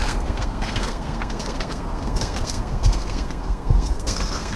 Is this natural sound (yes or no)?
no